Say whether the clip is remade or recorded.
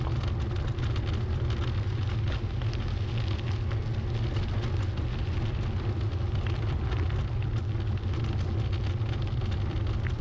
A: recorded